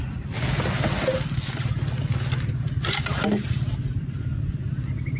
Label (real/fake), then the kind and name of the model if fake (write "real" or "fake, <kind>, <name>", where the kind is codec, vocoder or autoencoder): real